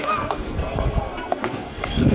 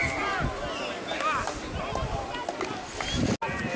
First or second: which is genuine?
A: second